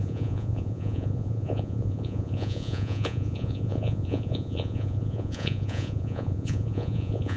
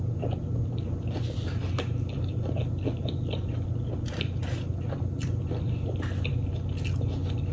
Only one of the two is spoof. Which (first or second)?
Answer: first